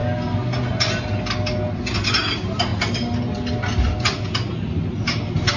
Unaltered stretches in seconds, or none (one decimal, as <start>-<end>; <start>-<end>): 0.0-5.6